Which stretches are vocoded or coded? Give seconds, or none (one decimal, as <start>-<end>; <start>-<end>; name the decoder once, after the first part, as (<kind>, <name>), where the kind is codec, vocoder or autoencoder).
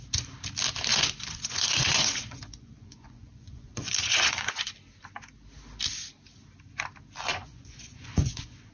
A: 0.9-4.7 (vocoder, Vocos); 7.3-8.7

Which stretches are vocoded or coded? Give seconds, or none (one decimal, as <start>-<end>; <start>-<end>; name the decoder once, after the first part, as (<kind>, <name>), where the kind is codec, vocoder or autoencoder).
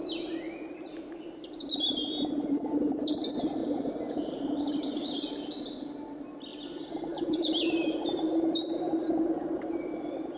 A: 3.6-4.7 (vocoder, BigVGAN v2); 6.5-8.3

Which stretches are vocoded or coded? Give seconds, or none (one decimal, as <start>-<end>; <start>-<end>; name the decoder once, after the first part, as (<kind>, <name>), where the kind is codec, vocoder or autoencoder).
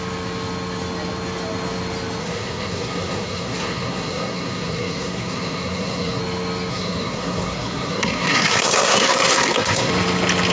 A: 2.2-6.2 (codec, SNAC); 6.7-9.9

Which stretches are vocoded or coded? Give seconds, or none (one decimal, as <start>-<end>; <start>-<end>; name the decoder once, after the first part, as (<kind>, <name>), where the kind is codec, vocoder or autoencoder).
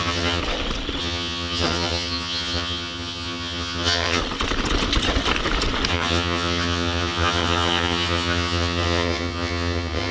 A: 0.0-0.4 (vocoder, HiFi-GAN); 1.0-4.2; 5.9-10.1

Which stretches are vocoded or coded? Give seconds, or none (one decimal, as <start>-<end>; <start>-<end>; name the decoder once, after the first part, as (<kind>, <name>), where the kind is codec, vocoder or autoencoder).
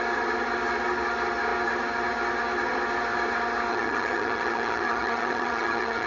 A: 3.7-6.1 (vocoder, HiFi-GAN)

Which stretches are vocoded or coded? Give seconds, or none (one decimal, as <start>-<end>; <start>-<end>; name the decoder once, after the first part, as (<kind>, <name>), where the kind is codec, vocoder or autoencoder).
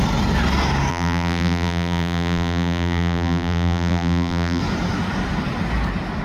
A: 0.9-4.6 (vocoder, BigVGAN v2)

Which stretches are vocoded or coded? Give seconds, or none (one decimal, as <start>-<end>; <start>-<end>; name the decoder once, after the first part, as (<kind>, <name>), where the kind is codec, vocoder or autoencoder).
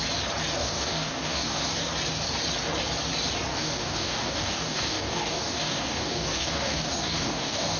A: 0.6-1.8 (codec, DAC); 3.5-7.8